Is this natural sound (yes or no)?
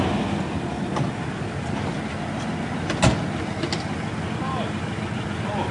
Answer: yes